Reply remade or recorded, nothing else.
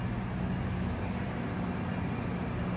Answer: recorded